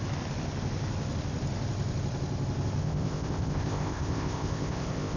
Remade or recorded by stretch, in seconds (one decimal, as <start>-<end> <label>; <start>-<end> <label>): 0.0-2.8 recorded; 2.8-5.2 remade